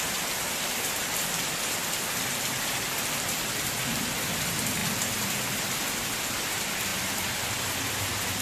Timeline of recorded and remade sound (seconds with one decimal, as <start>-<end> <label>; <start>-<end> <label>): 0.0-8.4 remade